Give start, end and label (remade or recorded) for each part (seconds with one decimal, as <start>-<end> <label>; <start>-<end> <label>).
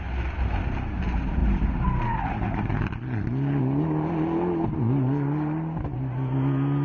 0.0-6.8 recorded